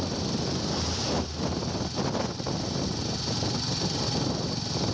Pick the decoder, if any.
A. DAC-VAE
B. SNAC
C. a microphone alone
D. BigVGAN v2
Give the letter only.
D